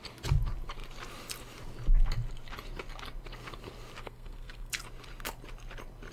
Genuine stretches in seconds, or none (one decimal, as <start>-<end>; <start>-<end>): 0.0-4.0; 4.7-6.1